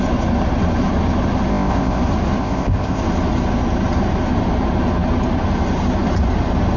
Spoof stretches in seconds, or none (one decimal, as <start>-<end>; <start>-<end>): 1.5-2.0; 2.4-3.0